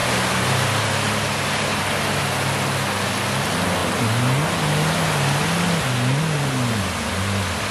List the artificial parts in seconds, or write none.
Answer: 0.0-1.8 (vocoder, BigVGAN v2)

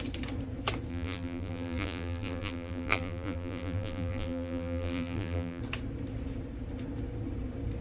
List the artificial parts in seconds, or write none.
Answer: 0.9-5.6 (vocoder, BigVGAN v2)

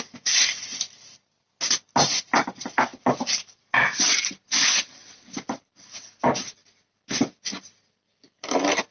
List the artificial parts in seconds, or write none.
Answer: none